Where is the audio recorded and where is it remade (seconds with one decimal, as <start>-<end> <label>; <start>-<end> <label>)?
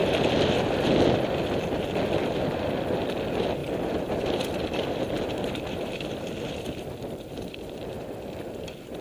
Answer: 0.0-3.6 recorded; 3.6-8.3 remade; 8.3-9.0 recorded